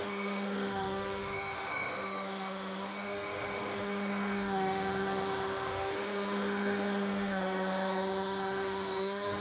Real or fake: fake